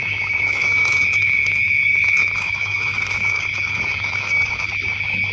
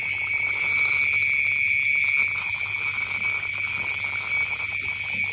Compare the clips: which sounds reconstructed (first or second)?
first